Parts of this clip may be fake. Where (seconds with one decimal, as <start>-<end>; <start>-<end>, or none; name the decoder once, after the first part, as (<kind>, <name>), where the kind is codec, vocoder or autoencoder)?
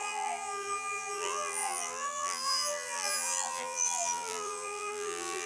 0.0-5.5 (vocoder, BigVGAN v2)